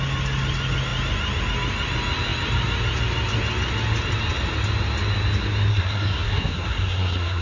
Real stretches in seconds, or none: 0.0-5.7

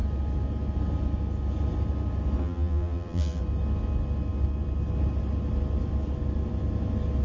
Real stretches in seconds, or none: 0.0-2.4; 3.4-7.2

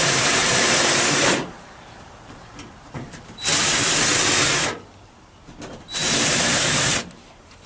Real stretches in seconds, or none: 3.7-4.5